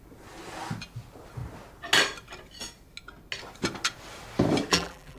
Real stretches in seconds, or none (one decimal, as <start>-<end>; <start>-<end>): 0.0-4.7